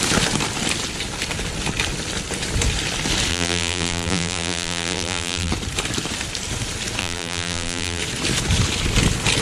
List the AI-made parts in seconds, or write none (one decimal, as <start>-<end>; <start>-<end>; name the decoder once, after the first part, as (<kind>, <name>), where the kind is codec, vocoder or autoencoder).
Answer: 3.3-5.5 (vocoder, BigVGAN v2); 7.0-8.0